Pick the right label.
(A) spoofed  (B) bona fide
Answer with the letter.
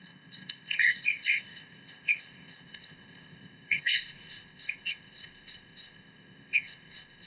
A